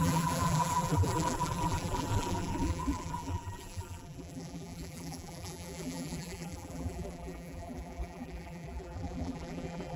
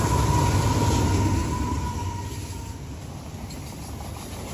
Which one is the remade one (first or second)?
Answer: first